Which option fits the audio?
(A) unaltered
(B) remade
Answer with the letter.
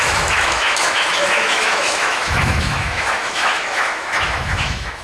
B